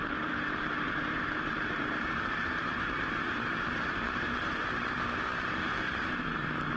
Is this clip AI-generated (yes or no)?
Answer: yes